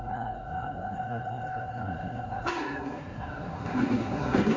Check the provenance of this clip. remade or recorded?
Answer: remade